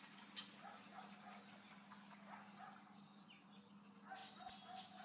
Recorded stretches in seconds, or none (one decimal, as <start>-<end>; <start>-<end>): 0.0-5.0